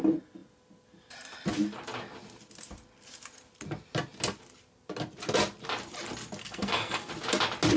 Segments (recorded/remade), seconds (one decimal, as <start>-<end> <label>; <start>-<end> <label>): 0.0-6.4 recorded; 6.4-7.1 remade; 7.1-7.8 recorded